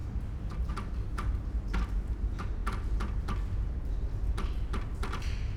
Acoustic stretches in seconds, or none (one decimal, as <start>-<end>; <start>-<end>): 0.0-5.6